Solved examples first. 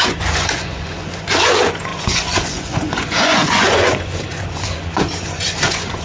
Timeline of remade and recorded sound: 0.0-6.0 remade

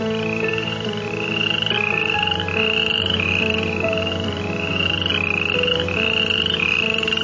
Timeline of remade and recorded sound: 0.0-5.1 remade; 5.1-5.7 recorded; 5.7-7.2 remade

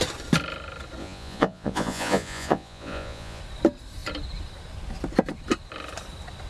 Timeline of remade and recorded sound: 0.0-1.0 recorded; 1.0-3.4 remade; 3.4-6.5 recorded